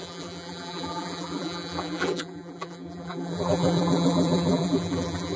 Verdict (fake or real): fake